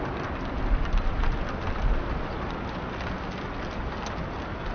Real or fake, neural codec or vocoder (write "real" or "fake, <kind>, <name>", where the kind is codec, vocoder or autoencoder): real